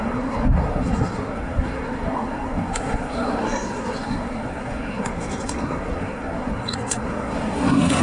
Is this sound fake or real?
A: fake